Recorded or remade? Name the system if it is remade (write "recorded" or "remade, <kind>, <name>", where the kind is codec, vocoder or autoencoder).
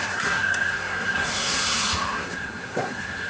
remade, codec, SNAC